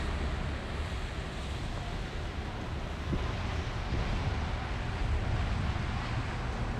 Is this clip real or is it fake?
real